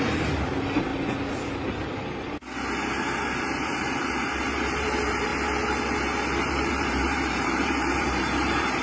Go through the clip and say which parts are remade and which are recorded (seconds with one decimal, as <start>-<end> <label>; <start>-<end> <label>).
0.0-0.9 remade; 0.9-3.8 recorded; 3.8-5.3 remade; 5.3-6.5 recorded; 6.5-8.8 remade